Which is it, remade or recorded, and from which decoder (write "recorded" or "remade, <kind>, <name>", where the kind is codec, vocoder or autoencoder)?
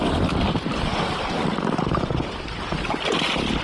recorded